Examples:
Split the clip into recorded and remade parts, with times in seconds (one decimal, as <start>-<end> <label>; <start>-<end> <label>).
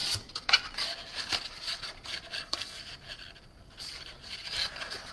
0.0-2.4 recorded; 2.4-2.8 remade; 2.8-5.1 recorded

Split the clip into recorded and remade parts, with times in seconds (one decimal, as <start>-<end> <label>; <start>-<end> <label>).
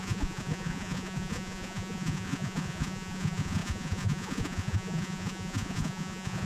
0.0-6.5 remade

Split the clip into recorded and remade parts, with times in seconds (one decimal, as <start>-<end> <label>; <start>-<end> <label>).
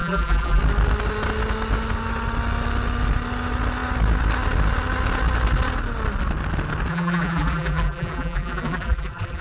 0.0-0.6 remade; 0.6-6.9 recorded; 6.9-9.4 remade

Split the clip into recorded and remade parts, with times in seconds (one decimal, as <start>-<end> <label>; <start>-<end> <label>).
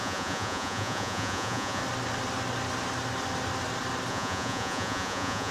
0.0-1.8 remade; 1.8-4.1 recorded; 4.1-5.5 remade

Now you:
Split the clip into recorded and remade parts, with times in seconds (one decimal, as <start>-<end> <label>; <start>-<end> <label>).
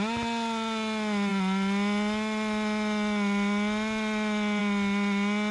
0.0-5.5 recorded